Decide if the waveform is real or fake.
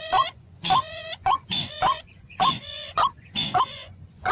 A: fake